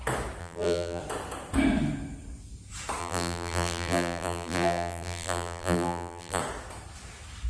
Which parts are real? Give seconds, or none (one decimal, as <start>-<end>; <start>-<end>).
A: 0.0-0.4; 1.0-3.0; 6.4-7.5